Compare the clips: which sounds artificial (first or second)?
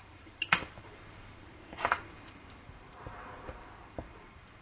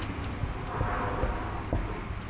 first